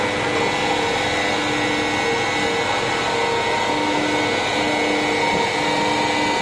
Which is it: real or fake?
real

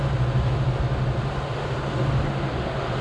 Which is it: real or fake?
real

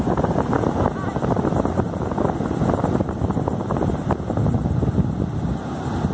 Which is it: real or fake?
real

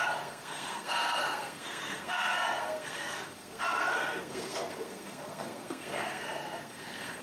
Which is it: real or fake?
fake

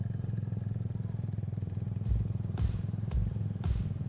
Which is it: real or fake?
fake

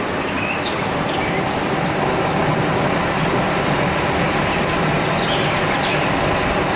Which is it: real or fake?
real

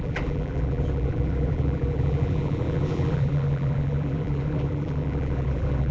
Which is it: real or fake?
fake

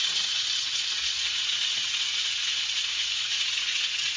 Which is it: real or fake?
fake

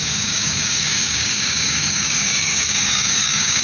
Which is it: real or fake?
fake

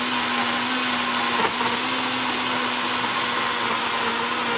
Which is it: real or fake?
real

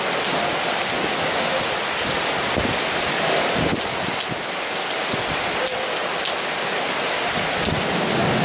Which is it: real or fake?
real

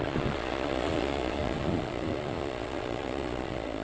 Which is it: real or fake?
fake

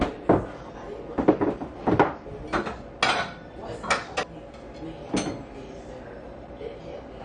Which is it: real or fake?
real